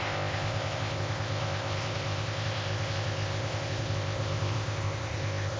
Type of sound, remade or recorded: remade